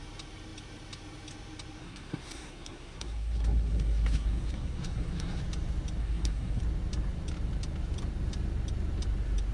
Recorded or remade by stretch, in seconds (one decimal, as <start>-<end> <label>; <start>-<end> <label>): 0.0-1.8 recorded; 1.8-5.4 remade; 5.4-6.0 recorded; 6.0-6.6 remade; 6.6-9.5 recorded

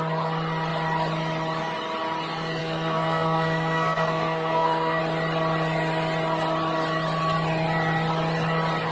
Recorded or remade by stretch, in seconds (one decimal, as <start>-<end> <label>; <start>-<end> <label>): 0.0-2.6 recorded; 2.6-5.0 remade; 5.0-8.9 recorded

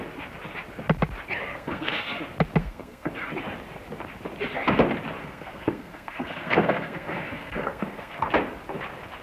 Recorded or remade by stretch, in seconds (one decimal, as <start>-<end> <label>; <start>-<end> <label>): 0.0-1.5 recorded; 1.5-2.2 remade; 2.2-2.6 recorded; 2.6-3.1 remade; 3.1-5.2 recorded; 5.2-8.3 remade; 8.3-9.2 recorded